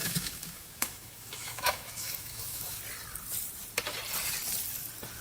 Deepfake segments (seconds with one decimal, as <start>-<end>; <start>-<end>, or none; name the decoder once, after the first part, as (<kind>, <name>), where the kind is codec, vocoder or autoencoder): 0.0-2.8 (autoencoder, DAC-VAE)